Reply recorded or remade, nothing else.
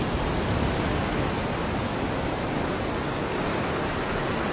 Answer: recorded